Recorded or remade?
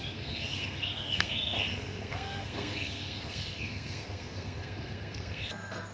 remade